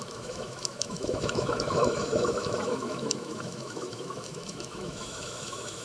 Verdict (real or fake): fake